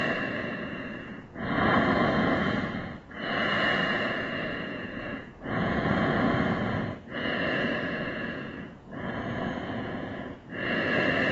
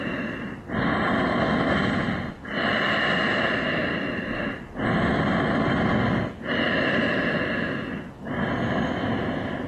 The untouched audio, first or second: second